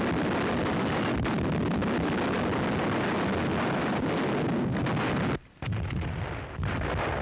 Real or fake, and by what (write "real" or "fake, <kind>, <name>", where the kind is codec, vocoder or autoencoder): real